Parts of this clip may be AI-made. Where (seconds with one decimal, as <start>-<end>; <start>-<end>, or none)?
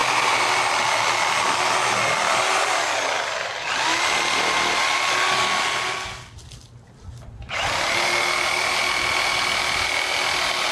none